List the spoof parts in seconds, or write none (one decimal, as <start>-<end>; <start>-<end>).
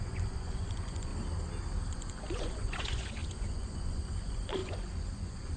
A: 0.0-1.1; 1.9-5.6